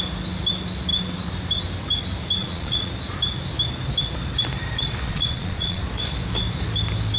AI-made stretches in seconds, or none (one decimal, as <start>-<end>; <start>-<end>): 2.4-2.9; 5.1-5.8